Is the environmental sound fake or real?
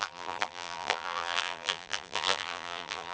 fake